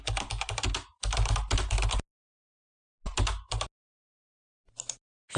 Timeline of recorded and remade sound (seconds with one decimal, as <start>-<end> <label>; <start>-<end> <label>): 0.0-5.4 recorded